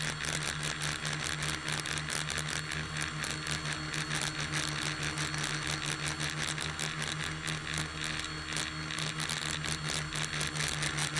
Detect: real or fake real